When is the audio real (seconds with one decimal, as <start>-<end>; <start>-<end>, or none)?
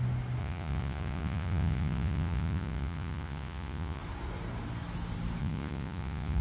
0.0-0.4; 4.0-5.4